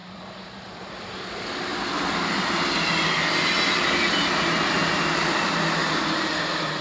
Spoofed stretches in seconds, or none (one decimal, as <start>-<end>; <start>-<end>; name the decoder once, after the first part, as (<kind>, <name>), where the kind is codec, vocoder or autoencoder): 0.0-1.1 (vocoder, BigVGAN v2); 4.8-5.6